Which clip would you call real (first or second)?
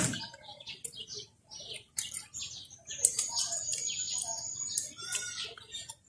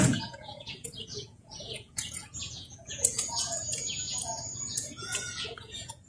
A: first